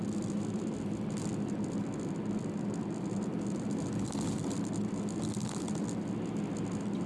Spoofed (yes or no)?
no